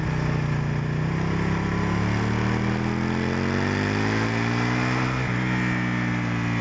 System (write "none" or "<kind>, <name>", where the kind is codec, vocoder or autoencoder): none